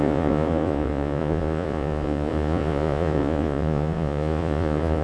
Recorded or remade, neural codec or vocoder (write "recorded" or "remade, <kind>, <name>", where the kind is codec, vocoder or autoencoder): remade, vocoder, Vocos